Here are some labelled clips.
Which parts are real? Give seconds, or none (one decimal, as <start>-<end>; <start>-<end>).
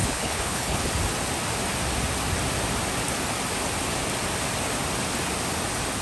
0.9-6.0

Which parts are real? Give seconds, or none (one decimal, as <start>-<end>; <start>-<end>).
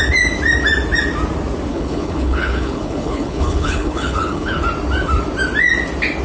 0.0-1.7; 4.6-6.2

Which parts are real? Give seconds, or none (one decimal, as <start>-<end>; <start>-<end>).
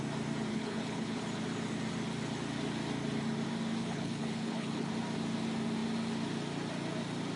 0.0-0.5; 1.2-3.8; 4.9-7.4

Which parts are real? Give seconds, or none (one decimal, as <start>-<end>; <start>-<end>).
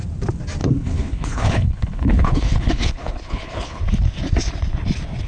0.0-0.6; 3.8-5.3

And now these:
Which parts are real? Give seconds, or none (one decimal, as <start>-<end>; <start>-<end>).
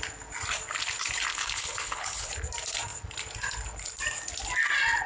0.0-1.3; 2.3-5.1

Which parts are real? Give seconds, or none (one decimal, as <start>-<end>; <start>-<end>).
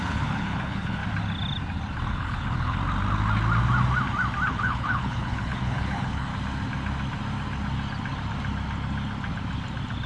1.0-2.1; 2.8-4.5; 6.3-10.1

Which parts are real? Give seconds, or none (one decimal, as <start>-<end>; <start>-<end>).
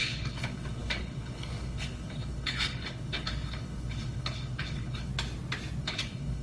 5.1-5.8